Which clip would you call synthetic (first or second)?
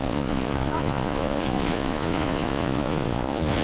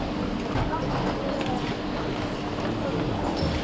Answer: first